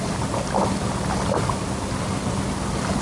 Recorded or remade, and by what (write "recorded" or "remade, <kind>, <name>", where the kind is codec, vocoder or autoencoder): recorded